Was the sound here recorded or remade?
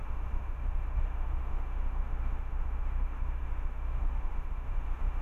remade